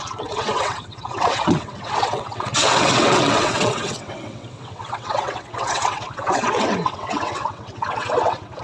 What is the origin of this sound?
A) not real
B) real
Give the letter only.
A